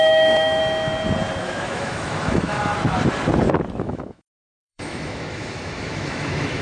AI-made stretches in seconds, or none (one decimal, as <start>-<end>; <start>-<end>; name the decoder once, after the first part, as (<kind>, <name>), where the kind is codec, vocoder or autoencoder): 0.0-0.6 (autoencoder, DAC-VAE); 1.4-2.7; 3.8-6.6